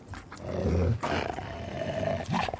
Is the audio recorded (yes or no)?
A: yes